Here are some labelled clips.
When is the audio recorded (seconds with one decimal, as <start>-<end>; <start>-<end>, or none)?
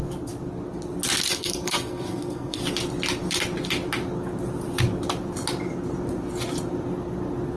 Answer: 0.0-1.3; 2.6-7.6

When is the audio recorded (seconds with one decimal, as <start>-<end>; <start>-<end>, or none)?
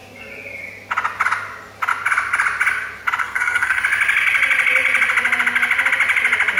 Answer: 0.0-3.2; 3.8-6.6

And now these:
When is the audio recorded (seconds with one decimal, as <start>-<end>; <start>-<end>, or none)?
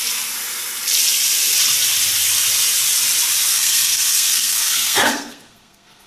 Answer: 0.0-3.5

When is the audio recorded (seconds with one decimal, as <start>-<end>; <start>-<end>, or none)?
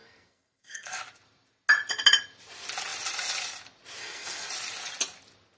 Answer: 1.0-4.0; 4.5-5.6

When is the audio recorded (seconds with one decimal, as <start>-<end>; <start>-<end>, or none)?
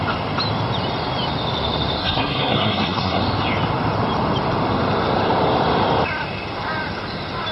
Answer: 0.0-2.0; 3.2-7.5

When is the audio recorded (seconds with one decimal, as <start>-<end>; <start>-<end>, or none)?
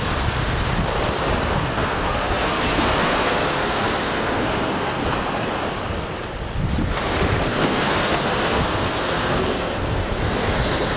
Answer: 0.4-1.6; 5.0-7.4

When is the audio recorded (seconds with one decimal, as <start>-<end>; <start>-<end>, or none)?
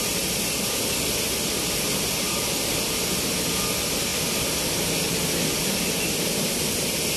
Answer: 0.0-7.2